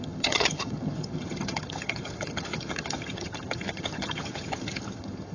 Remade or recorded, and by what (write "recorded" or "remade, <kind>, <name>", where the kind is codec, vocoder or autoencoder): remade, vocoder, HiFi-GAN